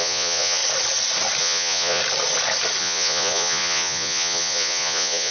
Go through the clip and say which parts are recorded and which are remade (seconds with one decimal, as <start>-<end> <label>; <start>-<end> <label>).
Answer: 0.0-0.6 remade; 0.6-1.4 recorded; 1.4-2.0 remade; 2.0-2.8 recorded; 2.8-5.3 remade